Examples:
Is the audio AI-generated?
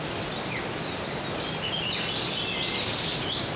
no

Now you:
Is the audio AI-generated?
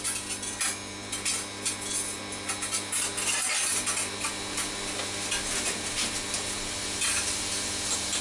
no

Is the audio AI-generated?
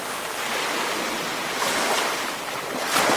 no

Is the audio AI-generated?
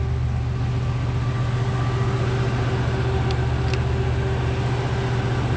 no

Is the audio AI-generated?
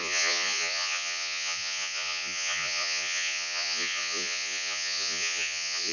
yes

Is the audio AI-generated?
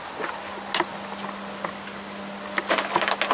no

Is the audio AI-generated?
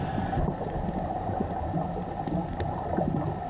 no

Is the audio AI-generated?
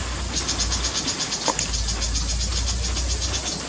no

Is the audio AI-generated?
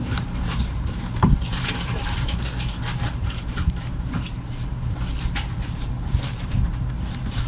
yes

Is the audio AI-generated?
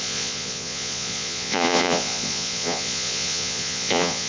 yes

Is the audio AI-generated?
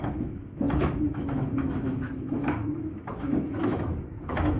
yes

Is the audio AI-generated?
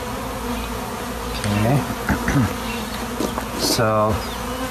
no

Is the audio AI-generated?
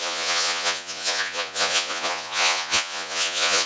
yes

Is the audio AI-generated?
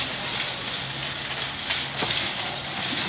no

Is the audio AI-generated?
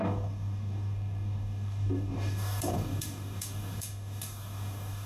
yes